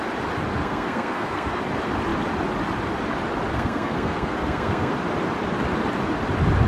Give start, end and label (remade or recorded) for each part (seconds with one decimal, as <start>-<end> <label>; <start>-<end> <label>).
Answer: 0.0-0.6 recorded; 0.6-1.6 remade; 1.6-3.5 recorded; 3.5-4.9 remade; 4.9-6.7 recorded